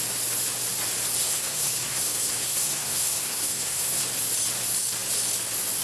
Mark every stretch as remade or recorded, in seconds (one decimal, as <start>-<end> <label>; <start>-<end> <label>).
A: 0.0-1.2 recorded; 1.2-4.0 remade; 4.0-5.8 recorded